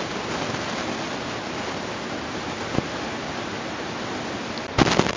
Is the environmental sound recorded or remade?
recorded